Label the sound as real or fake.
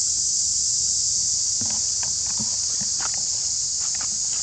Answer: real